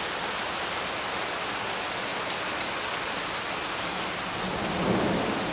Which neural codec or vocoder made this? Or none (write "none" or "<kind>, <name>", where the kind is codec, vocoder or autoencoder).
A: none